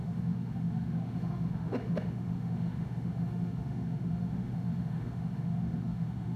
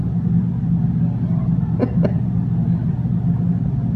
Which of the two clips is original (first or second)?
second